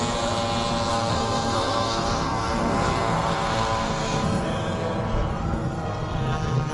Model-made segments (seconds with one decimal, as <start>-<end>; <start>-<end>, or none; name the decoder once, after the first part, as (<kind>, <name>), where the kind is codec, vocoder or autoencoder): 0.9-4.4 (codec, SNAC); 5.3-6.7